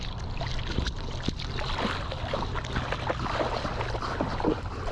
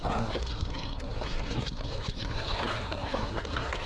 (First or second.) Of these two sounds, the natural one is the first